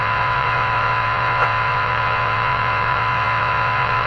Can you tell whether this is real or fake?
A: fake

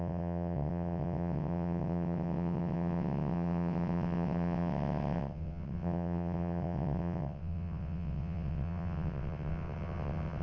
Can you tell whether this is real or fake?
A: fake